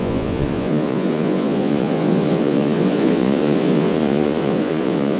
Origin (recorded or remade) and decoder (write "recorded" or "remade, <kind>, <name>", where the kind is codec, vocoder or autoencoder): remade, vocoder, Vocos